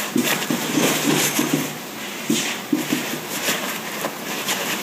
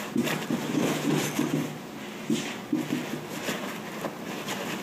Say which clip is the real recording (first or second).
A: second